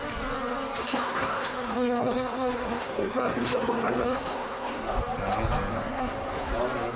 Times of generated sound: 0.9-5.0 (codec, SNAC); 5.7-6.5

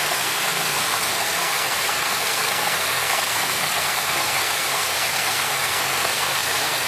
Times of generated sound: 0.0-6.9 (codec, SNAC)

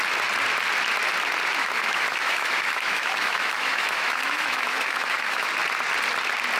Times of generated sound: 1.6-5.5 (autoencoder, DAC-VAE)

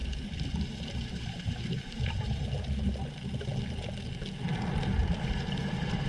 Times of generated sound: 0.0-2.4 (vocoder, BigVGAN v2); 5.0-6.1

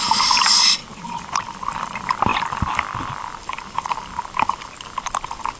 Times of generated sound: 0.0-5.6 (vocoder, BigVGAN v2)